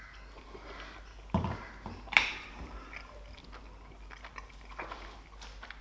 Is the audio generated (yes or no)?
no